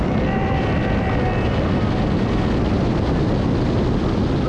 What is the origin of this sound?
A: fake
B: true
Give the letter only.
B